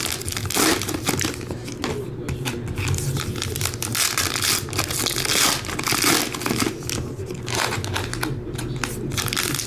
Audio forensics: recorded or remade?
recorded